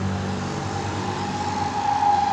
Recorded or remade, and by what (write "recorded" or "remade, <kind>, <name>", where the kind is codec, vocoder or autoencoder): recorded